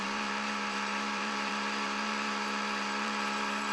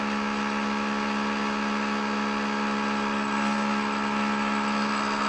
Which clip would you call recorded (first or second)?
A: second